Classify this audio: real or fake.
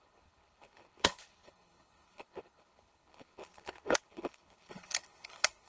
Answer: fake